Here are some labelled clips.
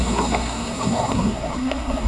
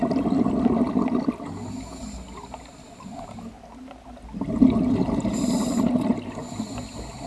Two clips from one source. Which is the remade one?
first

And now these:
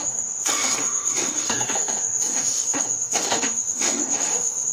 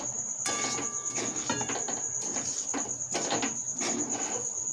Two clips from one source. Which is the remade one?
first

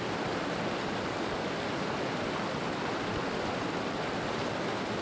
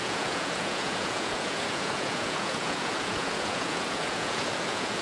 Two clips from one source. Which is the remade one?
second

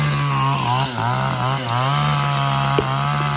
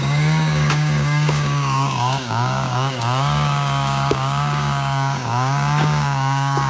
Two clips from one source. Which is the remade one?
second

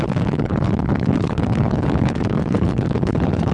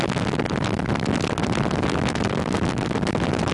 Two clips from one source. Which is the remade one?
first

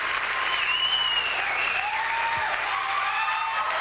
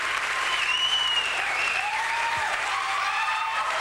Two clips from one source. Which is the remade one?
second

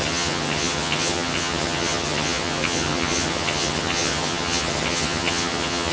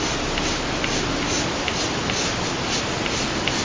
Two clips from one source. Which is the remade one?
first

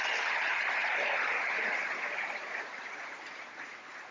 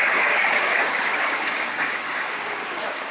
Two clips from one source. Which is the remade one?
second